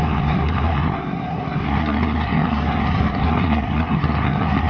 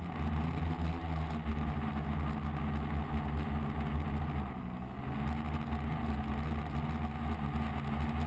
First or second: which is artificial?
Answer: first